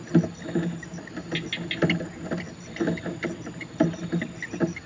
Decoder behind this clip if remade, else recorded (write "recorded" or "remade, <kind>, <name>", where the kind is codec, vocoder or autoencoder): recorded